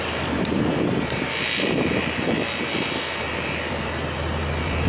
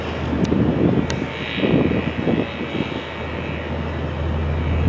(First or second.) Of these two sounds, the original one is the second